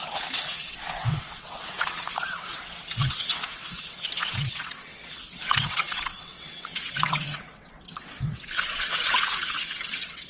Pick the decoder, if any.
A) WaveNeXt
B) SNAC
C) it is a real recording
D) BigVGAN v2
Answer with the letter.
A